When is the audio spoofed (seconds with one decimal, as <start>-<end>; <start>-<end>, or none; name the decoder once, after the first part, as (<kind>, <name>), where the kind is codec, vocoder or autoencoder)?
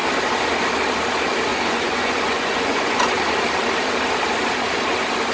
1.5-3.2 (vocoder, Vocos)